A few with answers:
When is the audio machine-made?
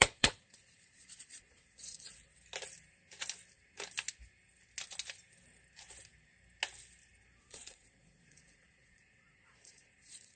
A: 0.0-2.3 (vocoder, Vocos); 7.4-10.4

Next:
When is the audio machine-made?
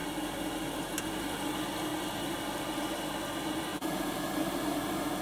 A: 3.7-4.3 (vocoder, Vocos)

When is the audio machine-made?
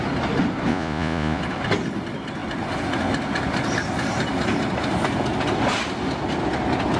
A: 0.7-1.4 (vocoder, Vocos)